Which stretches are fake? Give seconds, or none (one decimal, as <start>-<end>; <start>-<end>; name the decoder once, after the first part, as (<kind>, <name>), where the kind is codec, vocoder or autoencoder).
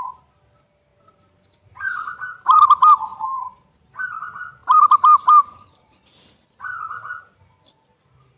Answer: 0.9-2.1 (vocoder, BigVGAN v2); 3.1-4.1; 4.6-6.3